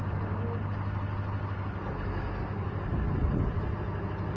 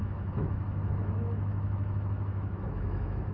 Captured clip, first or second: first